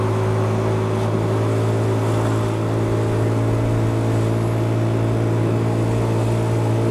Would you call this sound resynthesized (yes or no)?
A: no